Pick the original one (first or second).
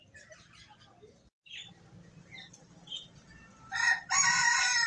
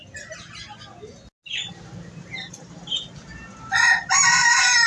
second